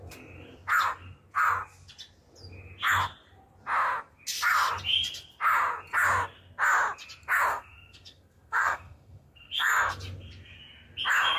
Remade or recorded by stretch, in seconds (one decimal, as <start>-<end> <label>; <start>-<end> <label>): 0.0-7.5 recorded; 7.5-9.9 remade; 9.9-11.4 recorded